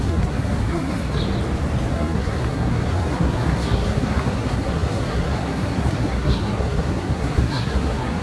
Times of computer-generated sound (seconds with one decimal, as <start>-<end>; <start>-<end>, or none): 0.0-1.2; 1.9-8.2